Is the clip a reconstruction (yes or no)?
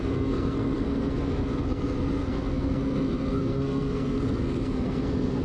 yes